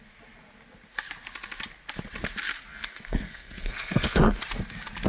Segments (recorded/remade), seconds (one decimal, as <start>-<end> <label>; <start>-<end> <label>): 0.0-2.7 recorded; 2.7-4.4 remade; 4.4-5.1 recorded